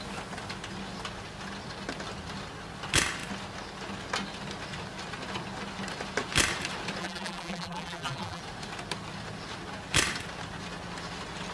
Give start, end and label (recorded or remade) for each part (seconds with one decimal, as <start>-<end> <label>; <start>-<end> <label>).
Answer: 0.0-7.0 recorded; 7.0-8.4 remade; 8.4-11.5 recorded